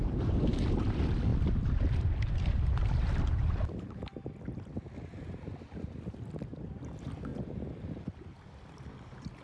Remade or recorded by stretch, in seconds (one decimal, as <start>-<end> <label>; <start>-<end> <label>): 0.0-9.4 recorded